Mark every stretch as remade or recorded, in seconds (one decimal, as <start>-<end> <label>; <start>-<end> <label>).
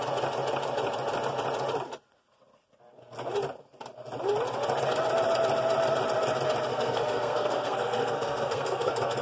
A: 0.0-6.7 recorded; 6.7-9.2 remade